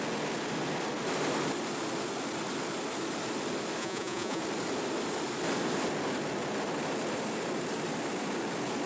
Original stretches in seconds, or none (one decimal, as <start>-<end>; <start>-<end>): 0.0-3.8; 4.4-8.9